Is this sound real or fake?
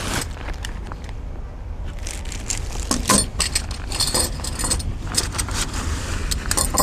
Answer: real